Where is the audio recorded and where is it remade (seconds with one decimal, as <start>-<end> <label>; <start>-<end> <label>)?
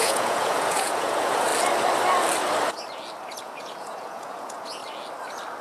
0.0-1.5 remade; 1.5-3.4 recorded; 3.4-4.8 remade; 4.8-5.6 recorded